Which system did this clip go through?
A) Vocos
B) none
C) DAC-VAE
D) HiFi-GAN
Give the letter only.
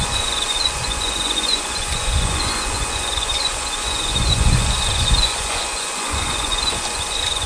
A